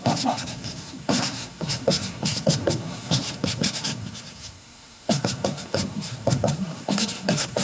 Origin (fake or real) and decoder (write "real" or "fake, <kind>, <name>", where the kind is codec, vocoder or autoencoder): fake, codec, SNAC